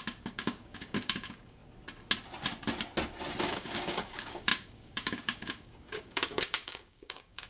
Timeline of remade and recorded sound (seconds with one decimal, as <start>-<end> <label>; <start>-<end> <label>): 0.0-1.6 remade; 1.6-3.4 recorded; 3.4-7.5 remade